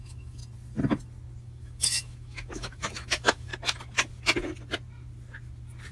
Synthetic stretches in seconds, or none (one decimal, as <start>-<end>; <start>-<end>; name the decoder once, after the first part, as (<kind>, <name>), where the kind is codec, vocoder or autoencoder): 0.0-0.4 (autoencoder, DAC-VAE); 1.4-3.5